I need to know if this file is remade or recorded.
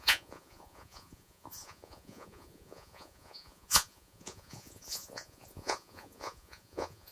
remade